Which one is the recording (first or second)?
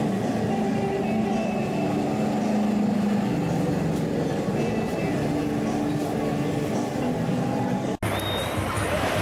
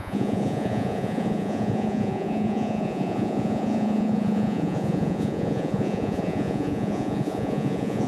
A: first